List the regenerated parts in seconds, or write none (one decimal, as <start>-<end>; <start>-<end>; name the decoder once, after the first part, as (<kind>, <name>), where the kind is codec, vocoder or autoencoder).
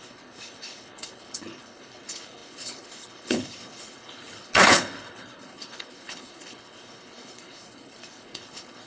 0.0-8.9 (codec, HILCodec)